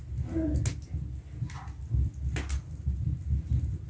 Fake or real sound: real